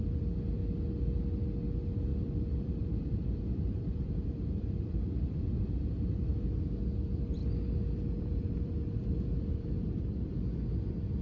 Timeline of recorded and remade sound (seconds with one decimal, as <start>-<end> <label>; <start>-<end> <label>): 0.0-0.6 remade; 0.6-1.7 recorded; 1.7-6.3 remade; 6.3-7.0 recorded; 7.0-7.4 remade; 7.4-8.2 recorded; 8.2-11.2 remade